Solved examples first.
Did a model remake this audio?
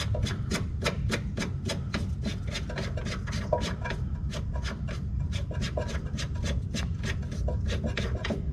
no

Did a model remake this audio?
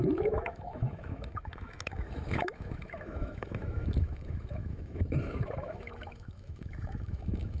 yes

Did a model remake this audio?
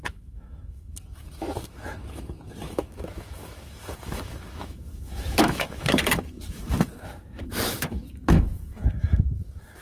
yes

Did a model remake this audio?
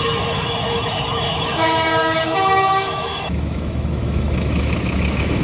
yes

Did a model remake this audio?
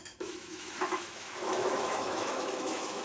yes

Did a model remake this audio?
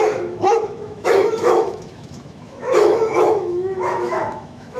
yes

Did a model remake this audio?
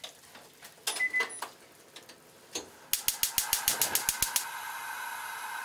no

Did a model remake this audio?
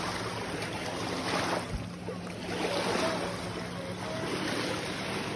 no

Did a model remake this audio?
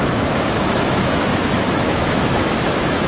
yes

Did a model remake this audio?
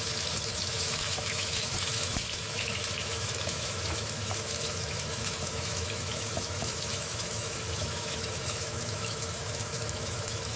yes